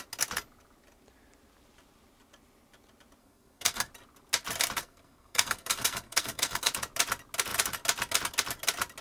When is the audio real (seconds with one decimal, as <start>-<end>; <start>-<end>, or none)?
0.0-3.2; 3.9-4.8; 6.7-9.0

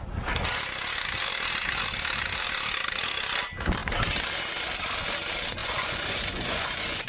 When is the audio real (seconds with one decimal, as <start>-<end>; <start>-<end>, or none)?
0.0-5.6